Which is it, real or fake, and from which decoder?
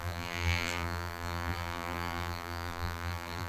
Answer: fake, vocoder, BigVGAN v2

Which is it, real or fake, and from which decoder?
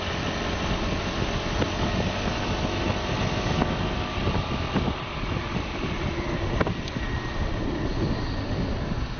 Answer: real